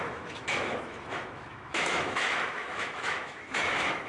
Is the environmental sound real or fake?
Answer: fake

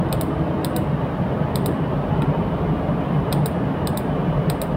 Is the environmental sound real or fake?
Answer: real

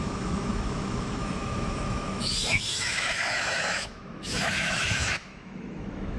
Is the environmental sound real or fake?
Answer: fake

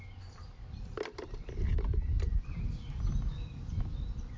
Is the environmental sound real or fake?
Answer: real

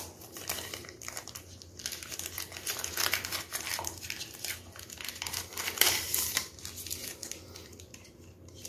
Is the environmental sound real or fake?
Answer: real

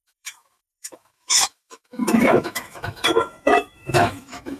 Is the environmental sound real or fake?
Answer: fake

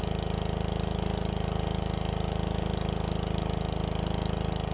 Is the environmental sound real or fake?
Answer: real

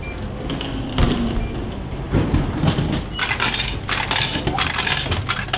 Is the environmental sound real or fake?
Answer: real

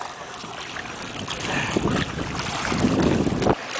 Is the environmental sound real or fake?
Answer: real